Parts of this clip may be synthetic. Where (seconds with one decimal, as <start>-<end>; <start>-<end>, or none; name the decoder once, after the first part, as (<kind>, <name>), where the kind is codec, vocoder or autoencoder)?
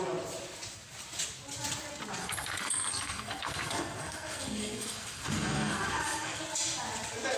2.2-6.4 (codec, SNAC)